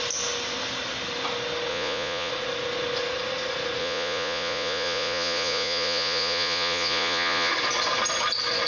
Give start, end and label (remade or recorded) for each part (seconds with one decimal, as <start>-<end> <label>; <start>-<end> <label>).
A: 0.0-1.7 recorded; 1.7-2.3 remade; 2.3-3.8 recorded; 3.8-7.5 remade; 7.5-8.7 recorded